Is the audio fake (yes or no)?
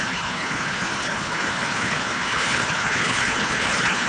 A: yes